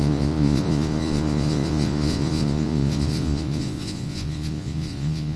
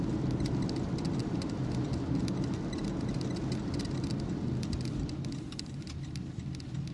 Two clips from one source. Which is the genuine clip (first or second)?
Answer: second